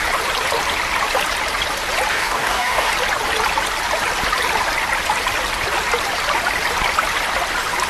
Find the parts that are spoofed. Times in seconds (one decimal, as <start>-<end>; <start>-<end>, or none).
2.1-2.9